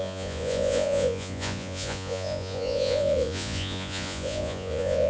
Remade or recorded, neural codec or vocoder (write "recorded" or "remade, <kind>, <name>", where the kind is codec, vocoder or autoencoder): remade, vocoder, Vocos